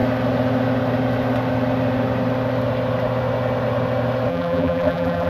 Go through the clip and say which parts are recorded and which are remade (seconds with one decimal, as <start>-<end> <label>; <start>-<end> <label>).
0.0-4.3 recorded; 4.3-5.3 remade